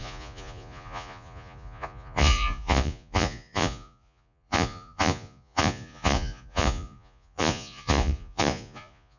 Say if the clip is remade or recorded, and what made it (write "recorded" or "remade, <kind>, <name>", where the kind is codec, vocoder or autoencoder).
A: remade, vocoder, Vocos